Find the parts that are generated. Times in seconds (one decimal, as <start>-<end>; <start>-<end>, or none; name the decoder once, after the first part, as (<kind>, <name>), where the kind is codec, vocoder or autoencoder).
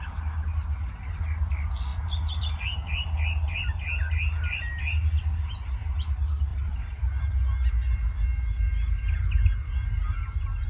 6.5-7.3 (vocoder, BigVGAN v2)